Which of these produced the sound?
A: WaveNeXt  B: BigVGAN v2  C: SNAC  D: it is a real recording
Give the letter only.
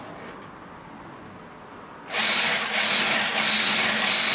D